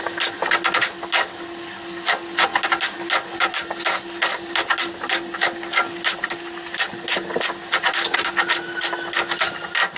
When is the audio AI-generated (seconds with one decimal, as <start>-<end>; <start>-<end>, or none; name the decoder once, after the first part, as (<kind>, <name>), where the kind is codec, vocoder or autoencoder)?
none